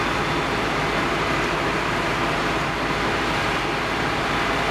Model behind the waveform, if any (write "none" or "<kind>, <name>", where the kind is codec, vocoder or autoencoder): none